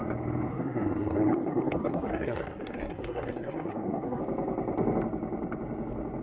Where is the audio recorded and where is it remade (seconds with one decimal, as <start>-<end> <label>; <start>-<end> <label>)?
0.0-0.5 recorded; 0.5-4.2 remade; 4.2-6.2 recorded